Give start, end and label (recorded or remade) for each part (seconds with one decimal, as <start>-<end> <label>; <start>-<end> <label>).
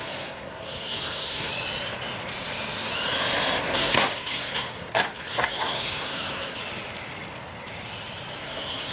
0.0-1.5 remade; 1.5-3.6 recorded; 3.6-6.6 remade; 6.6-8.4 recorded; 8.4-8.9 remade